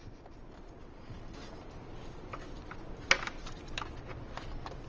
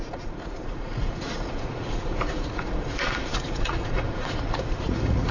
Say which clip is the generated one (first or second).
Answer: second